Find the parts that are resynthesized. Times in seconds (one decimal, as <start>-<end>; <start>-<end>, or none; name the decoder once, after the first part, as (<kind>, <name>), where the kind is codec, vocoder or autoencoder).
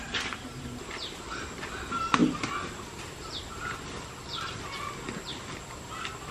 none